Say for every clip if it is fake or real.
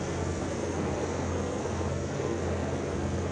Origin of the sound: fake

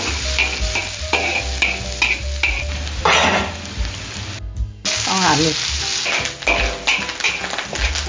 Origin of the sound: real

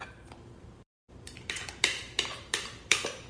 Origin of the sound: fake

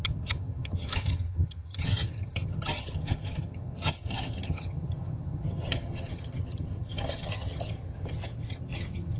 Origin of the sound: fake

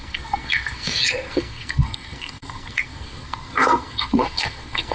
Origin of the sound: fake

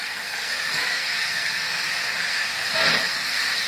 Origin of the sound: fake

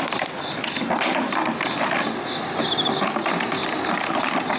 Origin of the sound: real